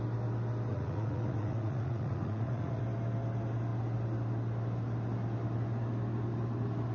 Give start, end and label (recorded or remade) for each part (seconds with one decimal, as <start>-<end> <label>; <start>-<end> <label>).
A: 0.0-0.7 recorded; 0.7-2.8 remade; 2.8-6.9 recorded